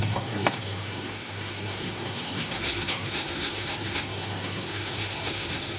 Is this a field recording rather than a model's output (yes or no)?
no